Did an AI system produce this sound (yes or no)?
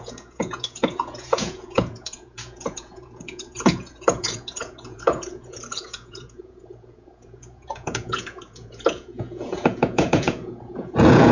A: yes